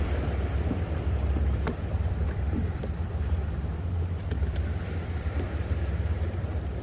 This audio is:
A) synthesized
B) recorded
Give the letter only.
A